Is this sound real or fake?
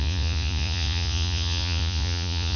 fake